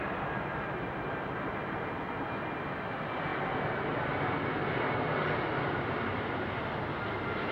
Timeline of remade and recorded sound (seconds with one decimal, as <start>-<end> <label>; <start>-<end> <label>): 0.0-7.5 recorded